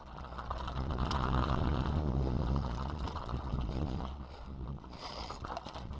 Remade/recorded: remade